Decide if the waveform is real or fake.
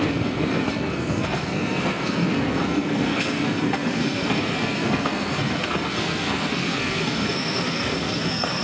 fake